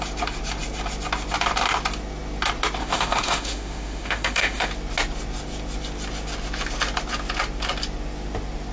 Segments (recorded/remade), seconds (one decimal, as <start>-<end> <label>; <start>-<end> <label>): 0.0-2.8 recorded; 2.8-4.7 remade; 4.7-8.7 recorded